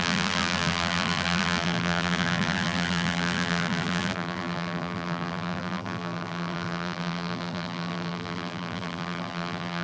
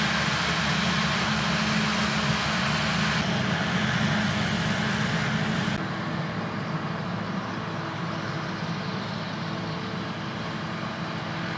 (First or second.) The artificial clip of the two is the first